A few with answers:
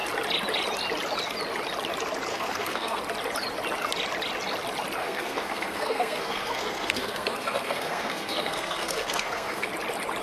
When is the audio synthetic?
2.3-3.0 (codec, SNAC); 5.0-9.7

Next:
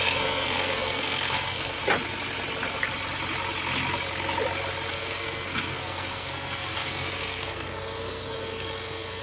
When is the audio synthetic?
0.0-1.8 (codec, SNAC); 4.9-9.2

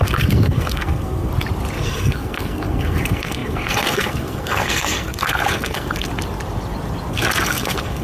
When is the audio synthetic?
0.0-1.3 (codec, SNAC); 1.8-6.1; 7.1-8.0

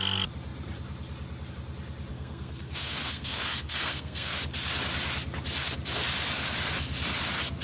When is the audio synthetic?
2.1-4.4 (codec, SNAC)

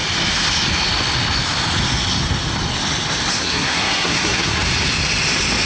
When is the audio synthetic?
3.3-4.6 (codec, SNAC)